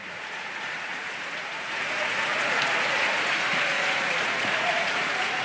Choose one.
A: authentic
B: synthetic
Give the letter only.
B